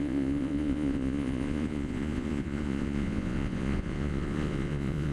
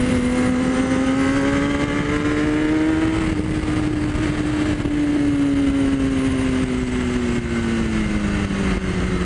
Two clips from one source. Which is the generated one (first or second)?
first